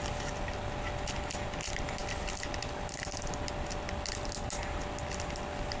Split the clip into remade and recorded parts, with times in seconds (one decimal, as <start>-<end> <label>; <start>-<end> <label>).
0.0-5.8 recorded